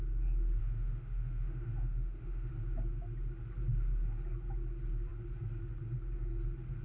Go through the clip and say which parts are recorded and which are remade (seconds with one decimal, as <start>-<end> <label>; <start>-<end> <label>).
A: 0.0-0.6 recorded; 0.6-2.5 remade; 2.5-6.8 recorded